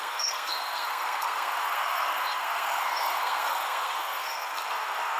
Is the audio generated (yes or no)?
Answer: yes